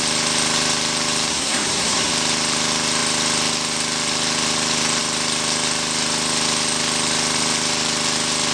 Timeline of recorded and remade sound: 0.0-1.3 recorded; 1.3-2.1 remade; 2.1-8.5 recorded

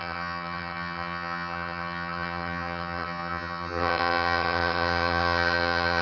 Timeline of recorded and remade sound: 0.0-6.0 remade

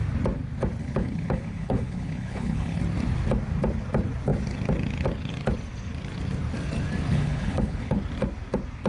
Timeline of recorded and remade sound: 0.0-0.8 recorded; 0.8-2.8 remade; 2.8-7.1 recorded; 7.1-8.0 remade; 8.0-8.9 recorded

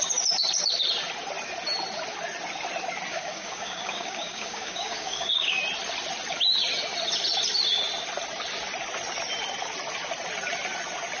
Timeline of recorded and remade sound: 0.0-3.1 recorded; 3.1-5.6 remade; 5.6-11.2 recorded

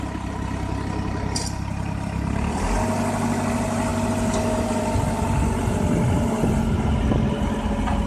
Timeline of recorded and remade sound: 0.0-3.9 recorded; 3.9-4.8 remade; 4.8-8.1 recorded

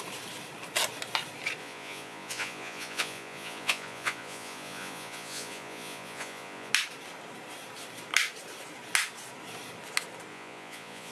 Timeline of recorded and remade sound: 0.0-1.6 recorded; 1.6-6.7 remade; 6.7-10.3 recorded; 10.3-11.1 remade

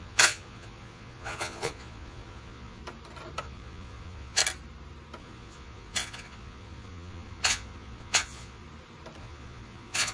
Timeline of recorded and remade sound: 0.0-2.8 remade; 2.8-3.4 recorded; 3.4-4.4 remade; 4.4-5.2 recorded; 5.2-8.6 remade; 8.6-9.2 recorded; 9.2-10.1 remade

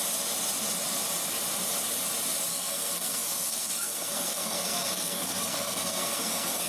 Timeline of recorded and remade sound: 0.0-2.5 recorded; 2.5-6.7 remade